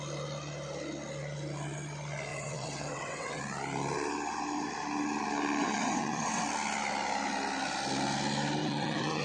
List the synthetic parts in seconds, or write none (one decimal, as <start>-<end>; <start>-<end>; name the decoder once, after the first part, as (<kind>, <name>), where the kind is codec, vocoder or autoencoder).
2.3-3.4 (vocoder, WaveNeXt); 5.6-6.4; 8.6-9.2